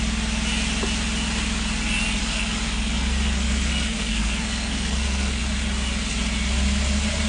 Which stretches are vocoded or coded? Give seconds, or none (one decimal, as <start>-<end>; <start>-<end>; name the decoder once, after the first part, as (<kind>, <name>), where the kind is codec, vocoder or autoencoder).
2.2-5.4 (codec, SNAC)